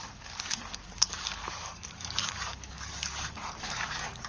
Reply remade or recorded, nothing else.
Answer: remade